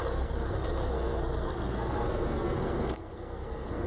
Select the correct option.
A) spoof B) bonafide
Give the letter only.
A